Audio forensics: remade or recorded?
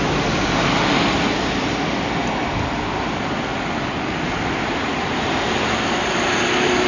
recorded